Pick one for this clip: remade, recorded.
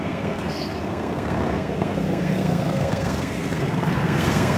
remade